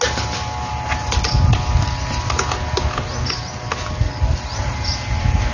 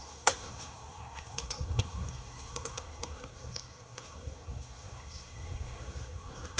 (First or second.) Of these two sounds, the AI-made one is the second